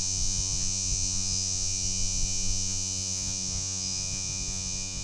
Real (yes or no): no